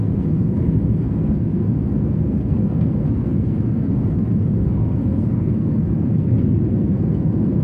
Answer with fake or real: fake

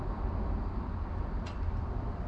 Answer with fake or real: real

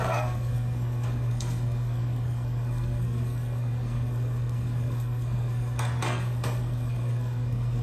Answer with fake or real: fake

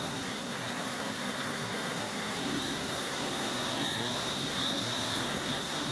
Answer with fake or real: fake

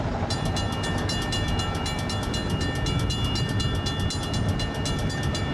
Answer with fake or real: real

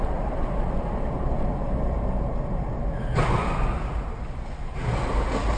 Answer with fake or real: real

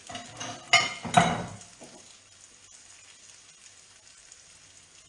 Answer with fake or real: real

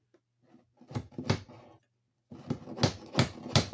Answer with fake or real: real